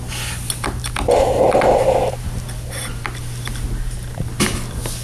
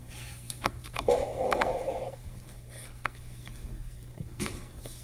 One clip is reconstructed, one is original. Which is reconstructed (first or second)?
second